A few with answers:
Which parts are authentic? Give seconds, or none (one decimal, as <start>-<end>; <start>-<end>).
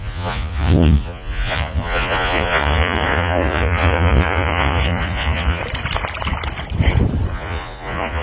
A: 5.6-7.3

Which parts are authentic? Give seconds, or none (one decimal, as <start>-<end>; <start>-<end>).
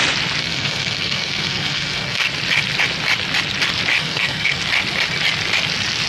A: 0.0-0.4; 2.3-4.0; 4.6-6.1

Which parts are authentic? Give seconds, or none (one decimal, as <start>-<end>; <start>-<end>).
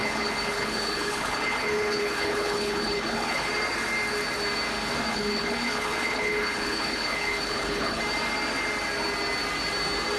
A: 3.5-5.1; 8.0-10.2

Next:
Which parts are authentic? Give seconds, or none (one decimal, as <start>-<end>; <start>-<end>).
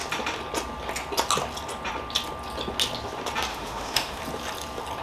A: 0.0-3.5; 4.2-5.0